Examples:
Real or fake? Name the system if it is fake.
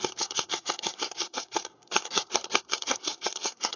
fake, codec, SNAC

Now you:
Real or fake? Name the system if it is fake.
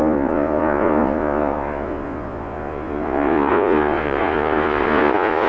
fake, vocoder, Vocos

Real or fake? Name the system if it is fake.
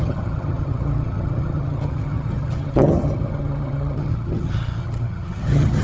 fake, vocoder, HiFi-GAN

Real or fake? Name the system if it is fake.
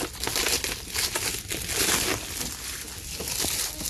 real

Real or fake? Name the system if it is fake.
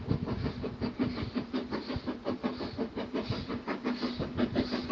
real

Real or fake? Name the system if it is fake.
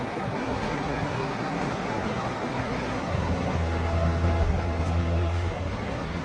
fake, codec, SNAC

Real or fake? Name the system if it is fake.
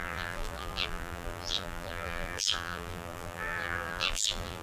fake, vocoder, BigVGAN v2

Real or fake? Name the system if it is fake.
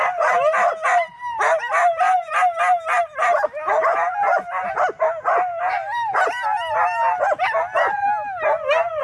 real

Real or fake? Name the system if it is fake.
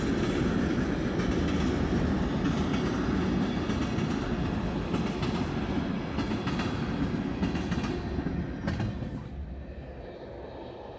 real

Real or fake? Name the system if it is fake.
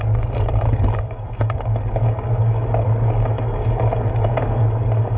fake, codec, DAC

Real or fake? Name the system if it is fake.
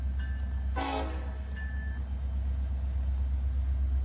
real